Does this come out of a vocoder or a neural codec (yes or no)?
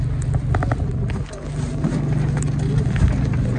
no